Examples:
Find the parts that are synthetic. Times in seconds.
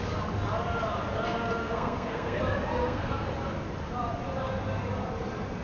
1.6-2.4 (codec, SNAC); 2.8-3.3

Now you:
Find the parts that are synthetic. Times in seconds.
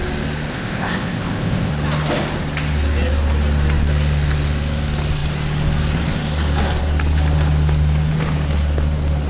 0.5-1.7 (codec, ZipCodec)